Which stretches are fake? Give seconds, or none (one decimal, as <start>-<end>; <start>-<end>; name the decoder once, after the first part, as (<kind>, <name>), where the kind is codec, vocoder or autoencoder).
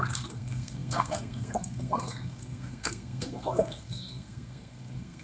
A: 0.0-5.2 (codec, SNAC)